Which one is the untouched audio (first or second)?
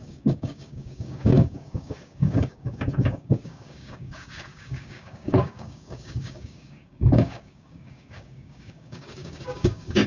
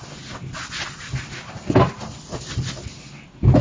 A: second